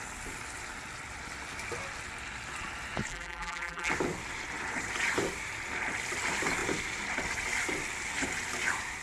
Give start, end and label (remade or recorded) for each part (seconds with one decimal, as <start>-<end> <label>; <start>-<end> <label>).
0.0-3.1 recorded; 3.1-3.9 remade; 3.9-9.0 recorded